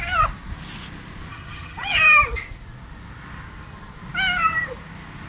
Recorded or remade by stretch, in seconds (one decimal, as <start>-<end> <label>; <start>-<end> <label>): 0.0-1.3 recorded; 1.3-2.0 remade; 2.0-5.3 recorded